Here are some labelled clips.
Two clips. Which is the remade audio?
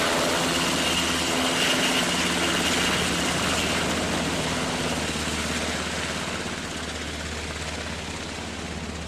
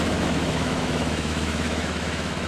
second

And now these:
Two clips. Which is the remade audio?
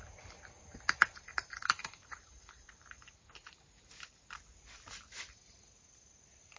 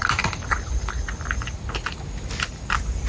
first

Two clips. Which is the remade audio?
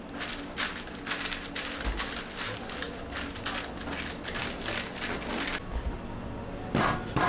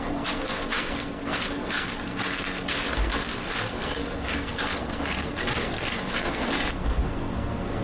second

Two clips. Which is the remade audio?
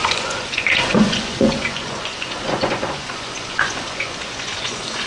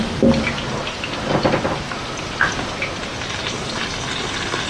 first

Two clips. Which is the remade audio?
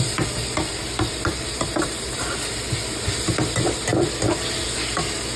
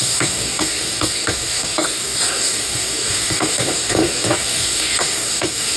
second